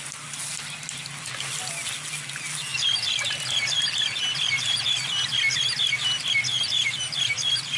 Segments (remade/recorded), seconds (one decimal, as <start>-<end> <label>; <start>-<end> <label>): 0.0-7.8 recorded